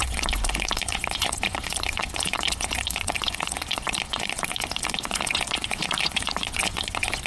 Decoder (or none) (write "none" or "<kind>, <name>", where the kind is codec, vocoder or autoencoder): vocoder, Vocos